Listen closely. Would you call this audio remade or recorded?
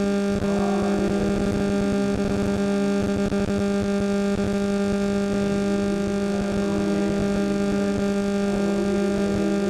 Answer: recorded